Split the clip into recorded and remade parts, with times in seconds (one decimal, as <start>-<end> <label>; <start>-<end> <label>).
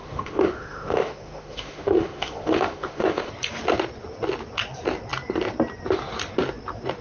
0.0-3.3 remade; 3.3-7.0 recorded